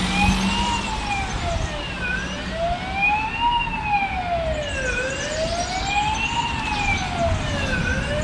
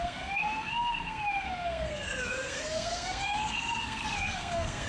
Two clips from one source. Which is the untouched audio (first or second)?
first